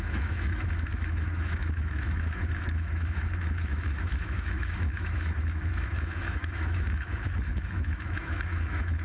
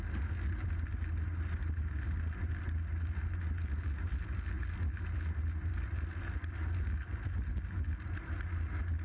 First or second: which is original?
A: second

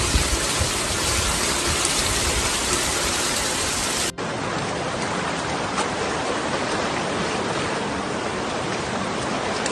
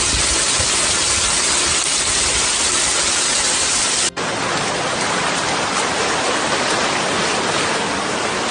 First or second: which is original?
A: second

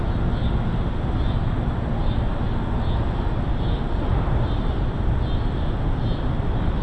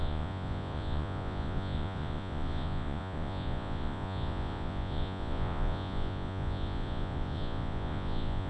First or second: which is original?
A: first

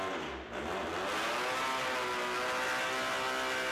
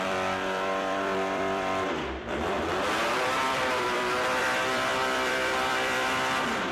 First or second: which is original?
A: first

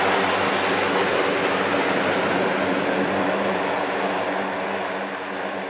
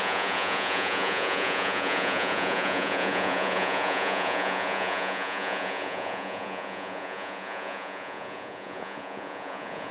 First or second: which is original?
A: first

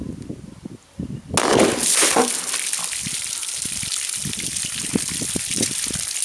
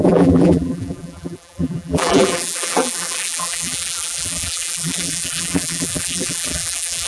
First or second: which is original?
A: first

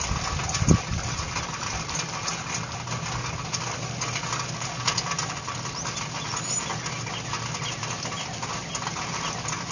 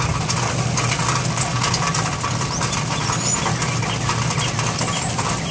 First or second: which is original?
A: first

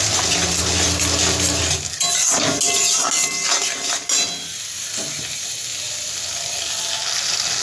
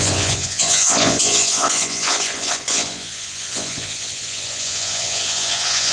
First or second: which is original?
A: first